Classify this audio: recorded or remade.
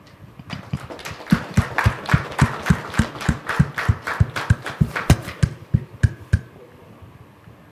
recorded